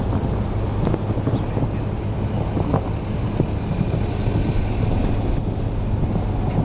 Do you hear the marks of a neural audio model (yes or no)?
no